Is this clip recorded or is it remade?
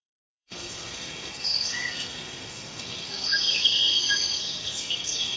remade